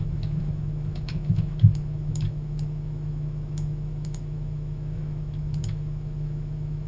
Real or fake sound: fake